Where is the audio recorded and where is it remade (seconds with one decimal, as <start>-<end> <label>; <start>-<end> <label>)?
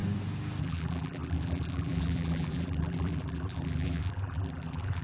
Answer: 0.0-0.6 recorded; 0.6-5.0 remade